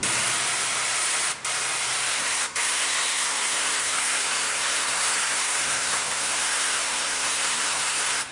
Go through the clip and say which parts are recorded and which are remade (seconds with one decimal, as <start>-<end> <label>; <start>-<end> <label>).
0.0-2.1 recorded; 2.1-8.3 remade